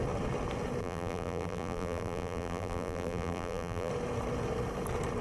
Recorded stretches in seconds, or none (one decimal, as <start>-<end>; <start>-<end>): 0.0-0.8; 3.9-5.2